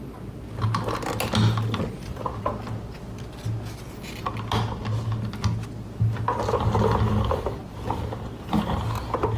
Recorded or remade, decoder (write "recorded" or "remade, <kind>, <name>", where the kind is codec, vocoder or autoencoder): recorded